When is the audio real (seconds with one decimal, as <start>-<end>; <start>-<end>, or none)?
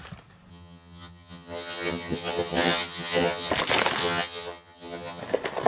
0.0-0.5; 3.5-4.0; 5.2-5.7